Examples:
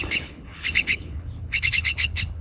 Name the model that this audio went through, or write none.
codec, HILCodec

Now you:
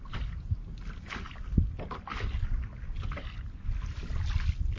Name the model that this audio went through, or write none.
none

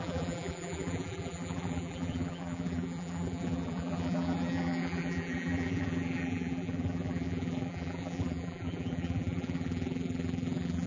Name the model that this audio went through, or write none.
vocoder, BigVGAN v2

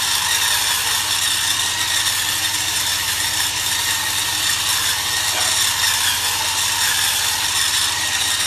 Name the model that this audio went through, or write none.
none